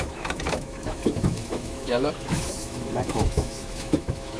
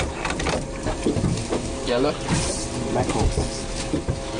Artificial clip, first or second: first